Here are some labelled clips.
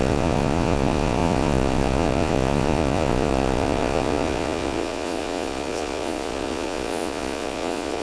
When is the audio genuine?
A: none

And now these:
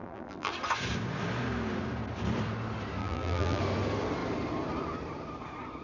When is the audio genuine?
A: 0.5-3.0; 3.6-5.8